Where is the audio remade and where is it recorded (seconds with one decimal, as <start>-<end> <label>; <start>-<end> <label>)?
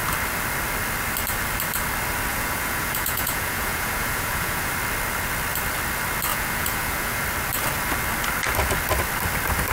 0.0-2.3 recorded; 2.3-4.7 remade; 4.7-6.3 recorded; 6.3-7.2 remade; 7.2-9.7 recorded